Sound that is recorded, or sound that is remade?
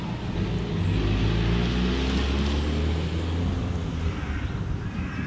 recorded